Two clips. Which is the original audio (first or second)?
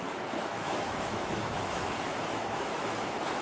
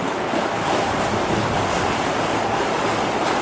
second